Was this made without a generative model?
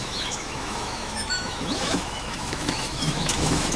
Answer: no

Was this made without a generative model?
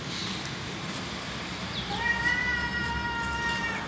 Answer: yes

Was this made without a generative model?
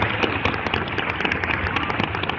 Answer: yes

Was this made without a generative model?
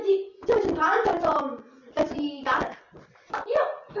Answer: yes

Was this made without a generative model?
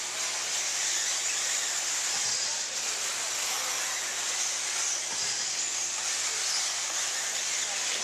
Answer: yes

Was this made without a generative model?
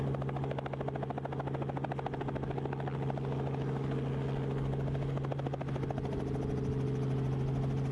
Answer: yes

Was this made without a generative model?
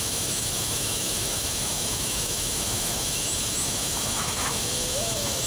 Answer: no